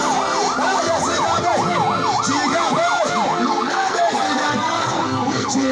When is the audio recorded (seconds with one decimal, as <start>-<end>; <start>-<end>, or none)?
0.0-3.3